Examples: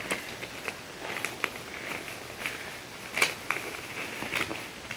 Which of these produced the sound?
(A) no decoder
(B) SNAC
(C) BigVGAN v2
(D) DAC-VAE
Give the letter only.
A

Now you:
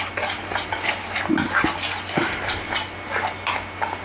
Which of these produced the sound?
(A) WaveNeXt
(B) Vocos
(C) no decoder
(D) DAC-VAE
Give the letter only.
C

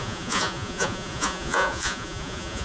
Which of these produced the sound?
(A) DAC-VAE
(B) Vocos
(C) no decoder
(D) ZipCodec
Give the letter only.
B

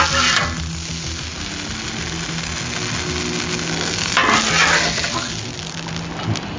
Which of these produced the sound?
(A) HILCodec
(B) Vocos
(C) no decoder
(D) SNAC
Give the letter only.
C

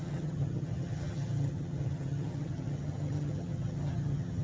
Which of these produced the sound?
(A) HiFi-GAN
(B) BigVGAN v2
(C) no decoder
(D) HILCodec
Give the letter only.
A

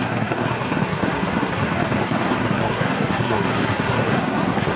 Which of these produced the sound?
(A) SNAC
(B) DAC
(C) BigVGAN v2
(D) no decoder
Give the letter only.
A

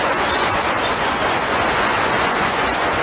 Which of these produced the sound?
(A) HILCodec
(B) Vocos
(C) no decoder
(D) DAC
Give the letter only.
B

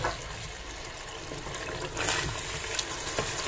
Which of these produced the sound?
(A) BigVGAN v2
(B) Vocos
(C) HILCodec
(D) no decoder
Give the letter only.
D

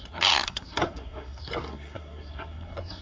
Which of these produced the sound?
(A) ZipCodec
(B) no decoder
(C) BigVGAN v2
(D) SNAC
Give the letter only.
D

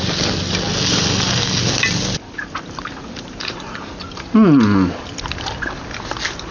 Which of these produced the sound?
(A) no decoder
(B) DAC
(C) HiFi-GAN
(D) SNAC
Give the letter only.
A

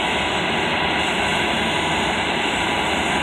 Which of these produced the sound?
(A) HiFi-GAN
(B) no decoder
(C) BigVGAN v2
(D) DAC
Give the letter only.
C